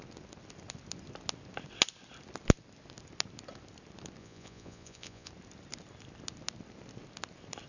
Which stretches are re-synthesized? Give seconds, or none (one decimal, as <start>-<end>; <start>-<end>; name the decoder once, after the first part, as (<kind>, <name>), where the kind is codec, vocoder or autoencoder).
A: 4.2-5.3 (vocoder, Vocos)